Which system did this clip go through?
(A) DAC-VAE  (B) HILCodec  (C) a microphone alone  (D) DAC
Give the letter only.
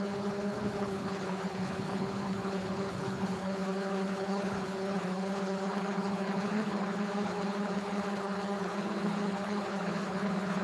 B